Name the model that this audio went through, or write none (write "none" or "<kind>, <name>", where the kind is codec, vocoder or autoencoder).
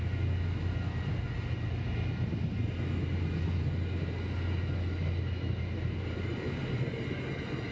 none